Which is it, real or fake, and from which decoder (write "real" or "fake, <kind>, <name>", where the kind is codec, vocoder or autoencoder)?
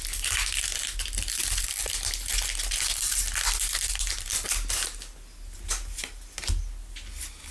real